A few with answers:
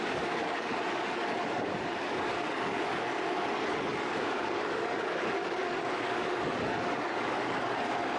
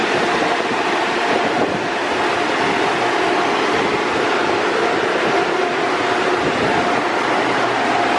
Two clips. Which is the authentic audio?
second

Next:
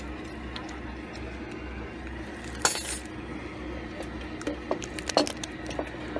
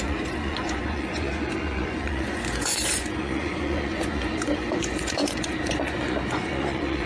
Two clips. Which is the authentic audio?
first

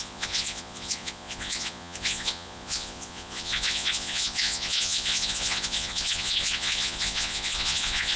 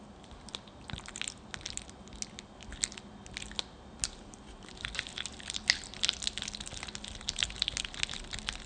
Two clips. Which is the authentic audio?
second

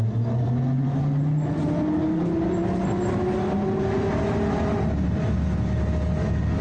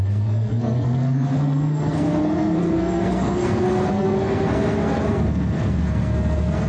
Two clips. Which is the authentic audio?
first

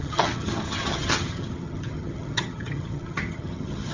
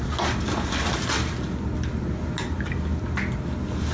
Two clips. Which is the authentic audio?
second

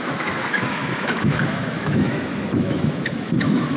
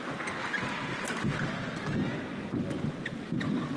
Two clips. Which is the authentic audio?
second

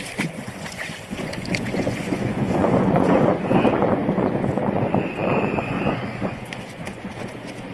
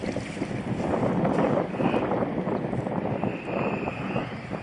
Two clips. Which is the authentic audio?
second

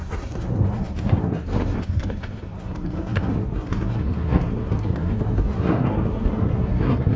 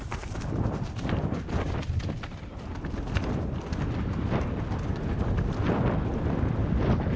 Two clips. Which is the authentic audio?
second